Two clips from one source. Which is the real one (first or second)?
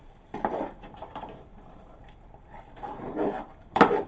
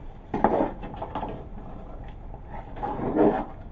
second